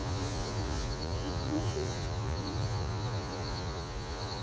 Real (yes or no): no